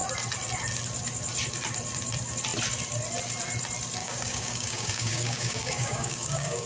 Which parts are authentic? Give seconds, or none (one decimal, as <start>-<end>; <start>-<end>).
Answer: 0.0-4.0